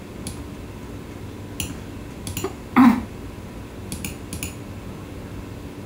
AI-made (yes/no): no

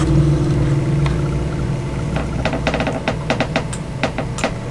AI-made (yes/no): no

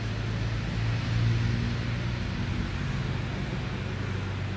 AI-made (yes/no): no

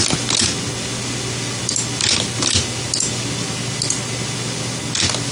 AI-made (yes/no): no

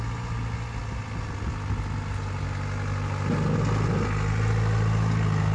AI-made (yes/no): no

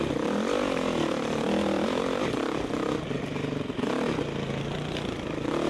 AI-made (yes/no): no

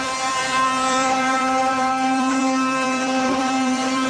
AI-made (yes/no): yes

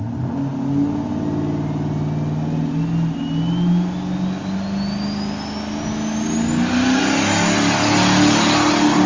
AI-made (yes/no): no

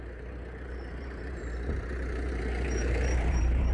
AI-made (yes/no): yes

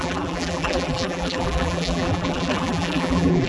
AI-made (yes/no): yes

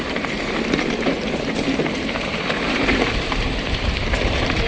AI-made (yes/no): yes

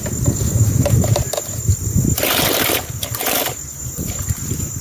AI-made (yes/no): no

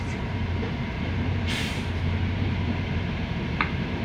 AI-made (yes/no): yes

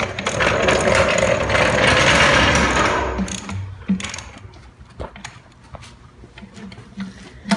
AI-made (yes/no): no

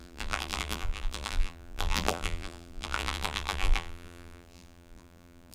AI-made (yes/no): yes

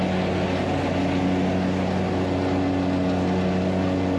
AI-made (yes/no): no